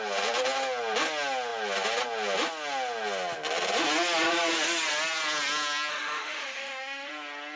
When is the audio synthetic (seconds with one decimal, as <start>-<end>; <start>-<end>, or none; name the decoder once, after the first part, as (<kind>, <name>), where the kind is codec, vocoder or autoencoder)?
5.9-7.1 (autoencoder, DAC-VAE)